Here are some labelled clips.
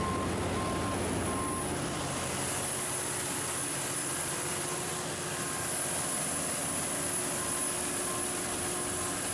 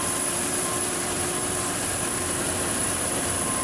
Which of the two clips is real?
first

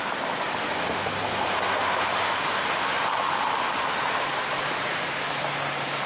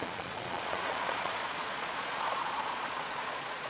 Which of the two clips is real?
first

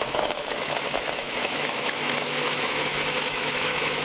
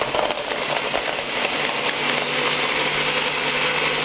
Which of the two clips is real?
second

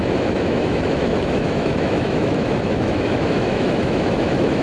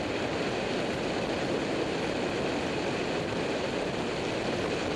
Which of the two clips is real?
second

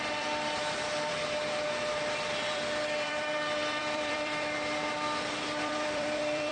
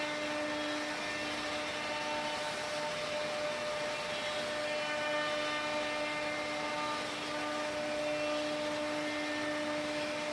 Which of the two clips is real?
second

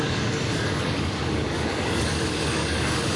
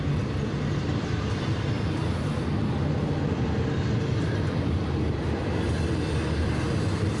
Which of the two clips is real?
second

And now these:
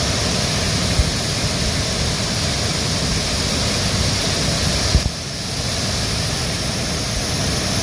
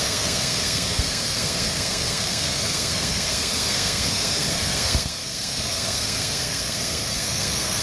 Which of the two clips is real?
first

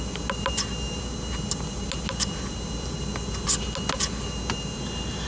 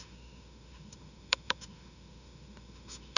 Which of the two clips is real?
first